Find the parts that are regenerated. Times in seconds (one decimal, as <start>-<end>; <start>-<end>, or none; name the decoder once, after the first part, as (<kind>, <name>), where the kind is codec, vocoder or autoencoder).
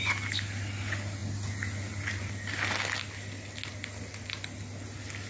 none